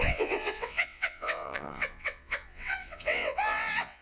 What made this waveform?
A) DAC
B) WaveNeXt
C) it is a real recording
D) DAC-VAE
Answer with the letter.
B